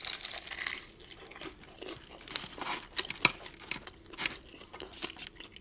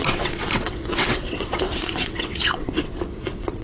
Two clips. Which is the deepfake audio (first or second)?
second